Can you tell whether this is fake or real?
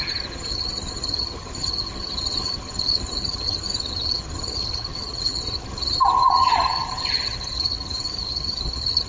fake